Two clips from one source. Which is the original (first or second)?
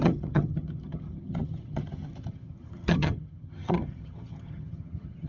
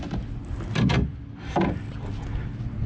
second